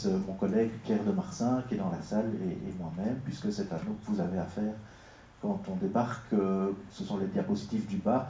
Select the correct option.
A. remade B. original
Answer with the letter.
B